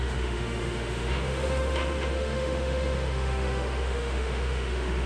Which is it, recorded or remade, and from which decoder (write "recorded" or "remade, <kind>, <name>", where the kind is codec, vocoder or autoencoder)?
remade, autoencoder, DAC-VAE